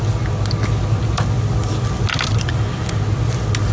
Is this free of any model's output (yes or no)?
yes